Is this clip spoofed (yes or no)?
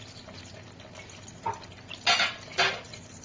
no